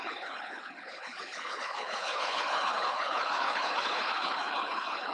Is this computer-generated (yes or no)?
yes